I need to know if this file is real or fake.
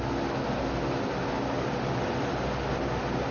real